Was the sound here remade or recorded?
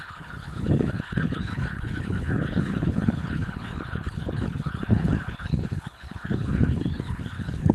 remade